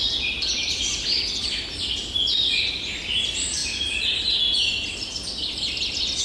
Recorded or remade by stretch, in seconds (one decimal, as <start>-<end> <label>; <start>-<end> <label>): 0.0-6.2 recorded